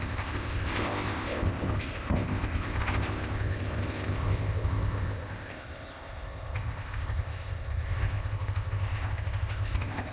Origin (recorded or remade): remade